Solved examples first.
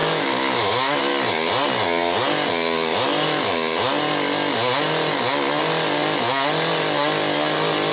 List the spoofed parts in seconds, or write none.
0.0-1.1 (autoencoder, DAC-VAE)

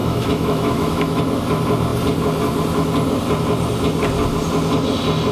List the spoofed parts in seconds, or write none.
0.0-1.2 (autoencoder, DAC-VAE)

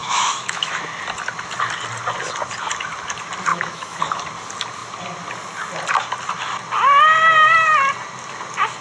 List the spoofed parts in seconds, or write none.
0.0-0.8 (autoencoder, DAC-VAE); 3.5-4.0